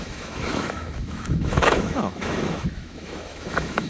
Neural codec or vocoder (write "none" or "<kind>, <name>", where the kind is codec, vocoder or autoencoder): autoencoder, DAC-VAE